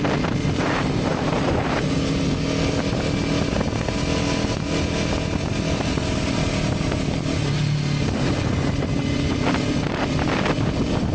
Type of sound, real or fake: real